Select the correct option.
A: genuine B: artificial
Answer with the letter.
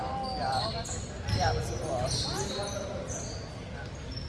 A